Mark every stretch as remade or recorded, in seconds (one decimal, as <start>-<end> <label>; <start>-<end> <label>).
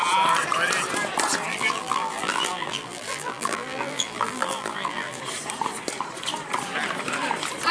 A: 0.0-1.5 recorded; 1.5-5.2 remade; 5.2-7.7 recorded